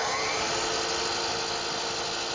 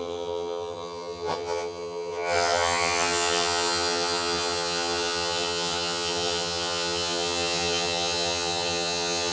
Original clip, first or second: first